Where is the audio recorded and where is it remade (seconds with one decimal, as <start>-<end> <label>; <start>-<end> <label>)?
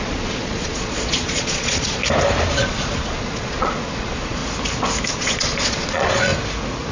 0.0-2.0 remade; 2.0-2.5 recorded; 2.5-4.4 remade; 4.4-5.1 recorded; 5.1-6.3 remade; 6.3-6.9 recorded